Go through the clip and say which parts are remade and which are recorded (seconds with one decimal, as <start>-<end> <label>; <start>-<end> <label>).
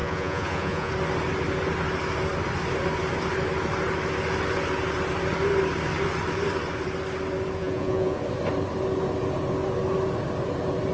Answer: 0.0-0.9 remade; 0.9-7.6 recorded; 7.6-8.2 remade; 8.2-10.9 recorded